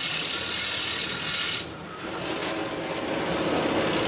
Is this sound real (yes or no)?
yes